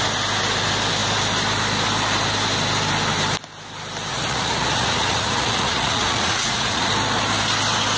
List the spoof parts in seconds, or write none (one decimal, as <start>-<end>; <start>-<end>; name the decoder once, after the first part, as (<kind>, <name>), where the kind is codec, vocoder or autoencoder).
4.1-6.9 (vocoder, Vocos)